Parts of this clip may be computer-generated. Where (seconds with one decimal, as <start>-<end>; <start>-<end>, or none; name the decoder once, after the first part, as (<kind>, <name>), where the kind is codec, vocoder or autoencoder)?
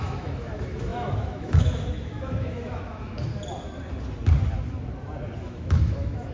0.0-3.3 (autoencoder, DAC-VAE); 5.4-6.3